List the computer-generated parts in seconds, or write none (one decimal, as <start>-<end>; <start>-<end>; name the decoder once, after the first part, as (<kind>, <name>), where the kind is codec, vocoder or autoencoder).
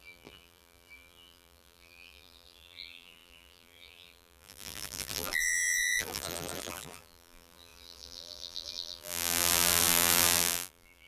0.0-11.1 (vocoder, BigVGAN v2)